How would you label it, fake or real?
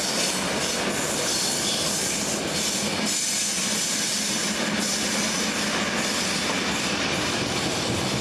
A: real